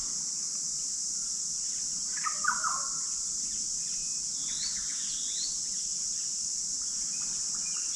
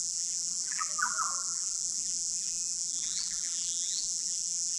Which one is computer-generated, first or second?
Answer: second